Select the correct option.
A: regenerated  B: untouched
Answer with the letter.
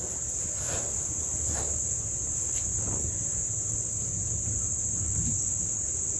B